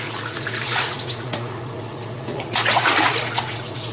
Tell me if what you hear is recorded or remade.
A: remade